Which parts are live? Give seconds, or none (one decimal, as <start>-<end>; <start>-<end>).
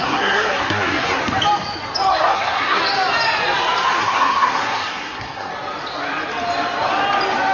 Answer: 1.2-2.1; 2.8-4.0; 5.5-7.5